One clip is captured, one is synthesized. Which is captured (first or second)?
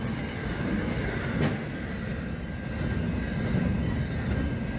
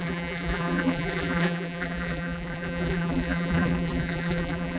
first